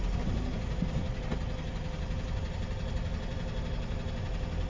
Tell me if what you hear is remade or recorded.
recorded